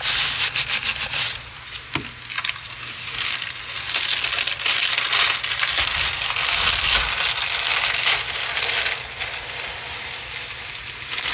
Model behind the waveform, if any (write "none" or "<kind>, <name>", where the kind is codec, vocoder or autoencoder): none